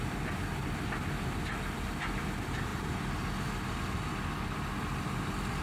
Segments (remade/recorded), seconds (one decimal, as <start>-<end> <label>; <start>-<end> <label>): 0.0-5.6 recorded